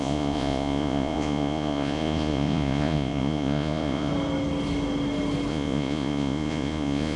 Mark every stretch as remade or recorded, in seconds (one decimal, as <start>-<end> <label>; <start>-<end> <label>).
0.0-4.1 remade; 4.1-5.5 recorded; 5.5-7.2 remade